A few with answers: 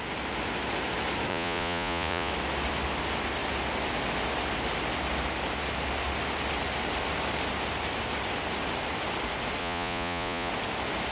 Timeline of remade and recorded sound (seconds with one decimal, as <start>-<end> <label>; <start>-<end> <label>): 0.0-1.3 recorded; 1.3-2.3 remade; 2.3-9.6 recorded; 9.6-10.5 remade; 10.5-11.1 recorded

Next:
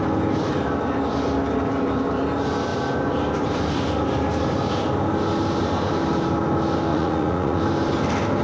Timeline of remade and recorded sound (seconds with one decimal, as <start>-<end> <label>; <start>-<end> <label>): 0.0-6.9 recorded; 6.9-7.6 remade; 7.6-8.4 recorded

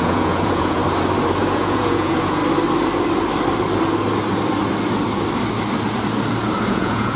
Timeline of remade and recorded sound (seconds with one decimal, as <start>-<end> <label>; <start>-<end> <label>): 0.0-0.8 remade; 0.8-1.4 recorded; 1.4-2.4 remade; 2.4-6.7 recorded; 6.7-7.2 remade

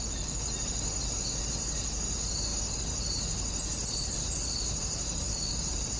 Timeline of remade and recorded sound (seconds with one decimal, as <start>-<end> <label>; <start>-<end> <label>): 0.0-6.0 recorded